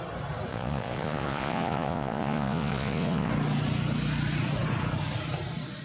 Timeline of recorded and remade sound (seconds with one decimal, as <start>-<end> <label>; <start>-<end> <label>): 0.0-0.5 recorded; 0.5-3.3 remade; 3.3-5.8 recorded